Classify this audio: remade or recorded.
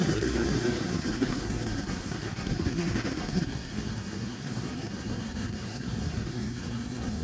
remade